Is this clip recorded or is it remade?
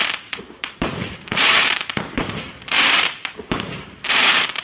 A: remade